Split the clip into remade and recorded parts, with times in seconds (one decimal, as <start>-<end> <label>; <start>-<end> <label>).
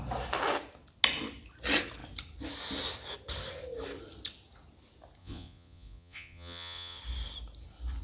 0.0-5.2 recorded; 5.2-7.0 remade; 7.0-8.0 recorded